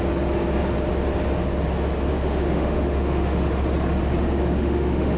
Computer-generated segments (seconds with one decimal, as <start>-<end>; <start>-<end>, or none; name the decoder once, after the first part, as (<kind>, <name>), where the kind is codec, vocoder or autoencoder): 2.1-3.5 (autoencoder, DAC-VAE); 4.4-5.2